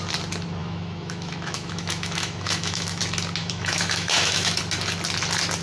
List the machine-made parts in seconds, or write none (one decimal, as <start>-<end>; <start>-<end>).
0.6-3.0; 3.4-4.6